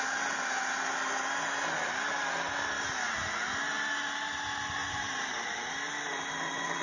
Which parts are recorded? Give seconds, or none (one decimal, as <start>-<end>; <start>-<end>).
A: 0.0-4.8; 5.3-6.8